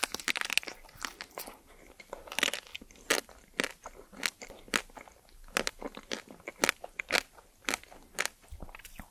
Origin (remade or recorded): recorded